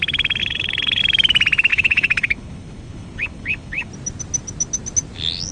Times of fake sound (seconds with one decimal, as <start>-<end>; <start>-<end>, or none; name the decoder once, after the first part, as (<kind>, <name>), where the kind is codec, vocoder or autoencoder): 0.4-1.0 (codec, HILCodec); 1.7-3.9